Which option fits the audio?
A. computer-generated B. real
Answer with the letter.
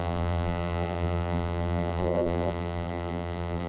A